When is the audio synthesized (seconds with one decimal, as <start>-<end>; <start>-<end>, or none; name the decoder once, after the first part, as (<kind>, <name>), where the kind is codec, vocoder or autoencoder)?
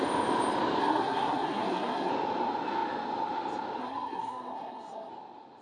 0.8-2.1 (codec, SNAC); 3.8-5.1